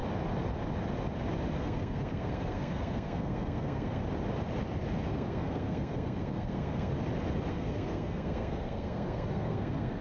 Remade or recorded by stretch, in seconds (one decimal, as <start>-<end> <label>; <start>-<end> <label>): 0.0-1.6 recorded; 1.6-4.0 remade; 4.0-5.1 recorded; 5.1-6.9 remade; 6.9-7.5 recorded; 7.5-10.0 remade